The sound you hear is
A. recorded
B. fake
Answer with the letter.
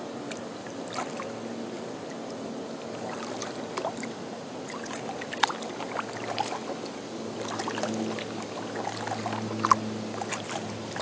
A